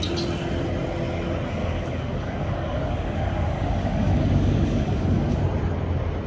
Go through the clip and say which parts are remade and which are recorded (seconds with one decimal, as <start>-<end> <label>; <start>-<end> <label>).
0.0-1.6 recorded; 1.6-5.4 remade; 5.4-6.3 recorded